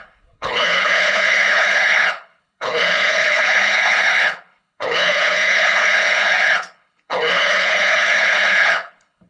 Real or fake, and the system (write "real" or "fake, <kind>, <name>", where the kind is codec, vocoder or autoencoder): fake, codec, HILCodec